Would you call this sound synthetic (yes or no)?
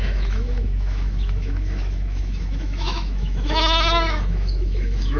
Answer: yes